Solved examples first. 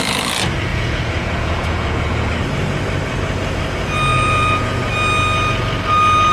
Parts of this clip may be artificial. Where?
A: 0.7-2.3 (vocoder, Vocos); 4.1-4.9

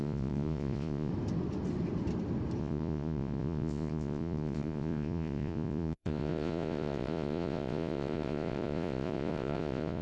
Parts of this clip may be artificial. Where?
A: 0.0-1.1 (vocoder, Vocos); 2.6-10.0

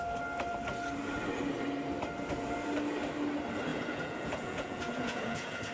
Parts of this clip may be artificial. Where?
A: 3.7-5.7 (vocoder, Vocos)

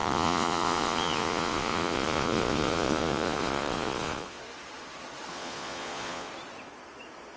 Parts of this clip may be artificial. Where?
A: 0.0-4.4 (vocoder, Vocos); 5.3-6.3